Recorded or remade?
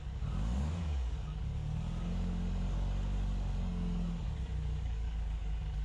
remade